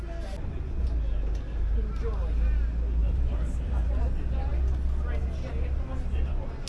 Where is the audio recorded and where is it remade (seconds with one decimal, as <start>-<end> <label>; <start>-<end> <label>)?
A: 0.0-3.0 recorded; 3.0-4.0 remade; 4.0-6.7 recorded